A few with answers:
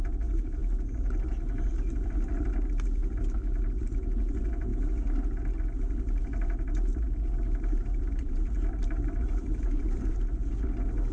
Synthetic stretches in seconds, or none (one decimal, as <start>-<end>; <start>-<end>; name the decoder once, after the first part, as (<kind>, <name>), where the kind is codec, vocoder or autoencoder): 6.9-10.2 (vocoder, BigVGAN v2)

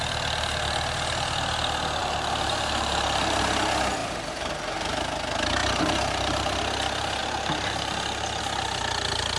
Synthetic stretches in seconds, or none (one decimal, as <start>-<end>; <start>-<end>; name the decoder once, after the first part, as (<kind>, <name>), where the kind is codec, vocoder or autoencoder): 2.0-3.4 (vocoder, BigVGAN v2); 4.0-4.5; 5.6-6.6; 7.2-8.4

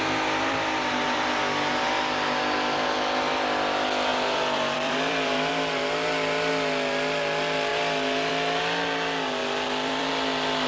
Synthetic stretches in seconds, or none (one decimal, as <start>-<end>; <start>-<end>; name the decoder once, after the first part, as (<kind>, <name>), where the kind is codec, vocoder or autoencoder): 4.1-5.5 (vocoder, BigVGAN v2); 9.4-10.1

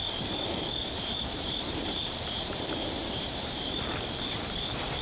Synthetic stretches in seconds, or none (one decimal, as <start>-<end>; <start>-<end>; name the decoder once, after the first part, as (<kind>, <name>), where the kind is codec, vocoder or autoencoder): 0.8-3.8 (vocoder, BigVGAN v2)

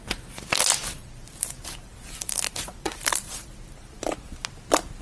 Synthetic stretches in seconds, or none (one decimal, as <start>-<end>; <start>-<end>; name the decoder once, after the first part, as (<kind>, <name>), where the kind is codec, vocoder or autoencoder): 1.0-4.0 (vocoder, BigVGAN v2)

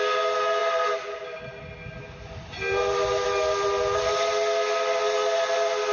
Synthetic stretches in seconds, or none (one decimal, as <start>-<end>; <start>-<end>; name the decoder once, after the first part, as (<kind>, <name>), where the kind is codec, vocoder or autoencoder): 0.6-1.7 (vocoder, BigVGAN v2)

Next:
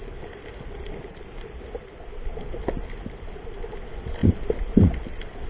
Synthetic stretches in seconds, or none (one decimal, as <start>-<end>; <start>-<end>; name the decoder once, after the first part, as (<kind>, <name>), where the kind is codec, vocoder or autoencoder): none

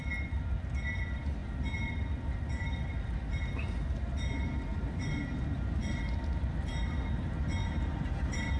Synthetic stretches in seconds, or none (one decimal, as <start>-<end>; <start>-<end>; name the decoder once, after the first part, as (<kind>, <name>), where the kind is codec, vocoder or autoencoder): 7.6-8.6 (vocoder, BigVGAN v2)